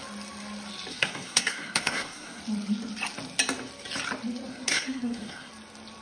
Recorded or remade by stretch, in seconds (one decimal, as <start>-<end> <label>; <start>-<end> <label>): 0.0-0.9 recorded; 0.9-2.4 remade; 2.4-4.5 recorded; 4.5-5.5 remade; 5.5-6.0 recorded